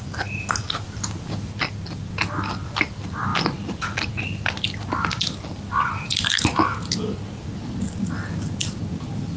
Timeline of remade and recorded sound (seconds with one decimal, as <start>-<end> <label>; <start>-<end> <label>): 0.0-9.4 recorded